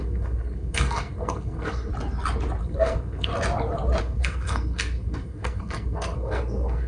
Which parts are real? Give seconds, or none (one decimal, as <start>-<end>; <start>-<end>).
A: 1.9-2.6; 3.3-4.0